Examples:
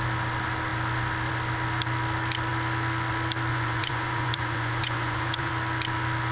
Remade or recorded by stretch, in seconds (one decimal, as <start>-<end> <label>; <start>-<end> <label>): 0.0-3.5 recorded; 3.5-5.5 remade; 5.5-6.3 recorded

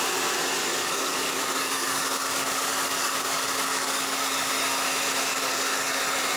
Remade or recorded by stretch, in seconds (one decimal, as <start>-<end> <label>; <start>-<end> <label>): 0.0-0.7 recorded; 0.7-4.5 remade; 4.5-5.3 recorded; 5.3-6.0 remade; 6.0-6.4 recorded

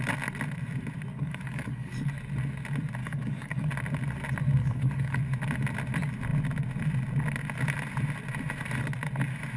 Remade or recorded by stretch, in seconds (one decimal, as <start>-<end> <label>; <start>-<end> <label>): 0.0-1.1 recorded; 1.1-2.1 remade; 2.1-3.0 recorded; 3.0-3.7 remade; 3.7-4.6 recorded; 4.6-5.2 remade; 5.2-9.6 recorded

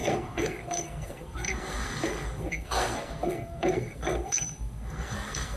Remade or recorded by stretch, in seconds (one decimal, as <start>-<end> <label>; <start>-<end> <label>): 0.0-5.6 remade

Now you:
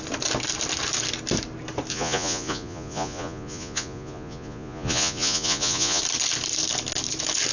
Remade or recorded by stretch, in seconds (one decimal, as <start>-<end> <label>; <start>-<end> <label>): 0.0-1.9 recorded; 1.9-6.0 remade; 6.0-7.5 recorded